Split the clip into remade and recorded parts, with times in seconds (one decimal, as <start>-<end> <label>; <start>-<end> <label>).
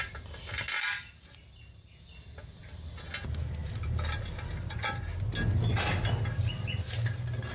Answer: 0.0-3.6 recorded; 3.6-5.2 remade; 5.2-7.5 recorded